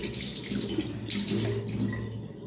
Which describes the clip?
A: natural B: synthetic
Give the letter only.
A